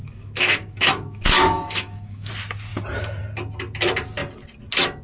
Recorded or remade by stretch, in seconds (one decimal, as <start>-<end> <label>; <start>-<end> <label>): 0.0-2.3 remade; 2.3-5.0 recorded